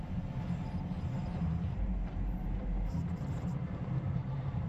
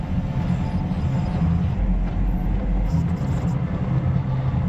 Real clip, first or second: second